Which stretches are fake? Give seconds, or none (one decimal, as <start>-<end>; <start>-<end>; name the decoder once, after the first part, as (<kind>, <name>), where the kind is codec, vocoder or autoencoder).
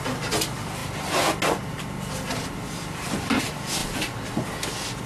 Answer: none